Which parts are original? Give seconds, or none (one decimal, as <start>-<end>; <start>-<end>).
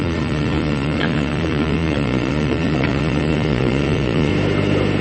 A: 4.3-5.0